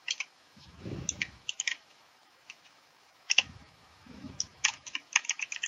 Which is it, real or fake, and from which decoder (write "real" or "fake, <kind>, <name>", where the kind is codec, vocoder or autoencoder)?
fake, autoencoder, DAC-VAE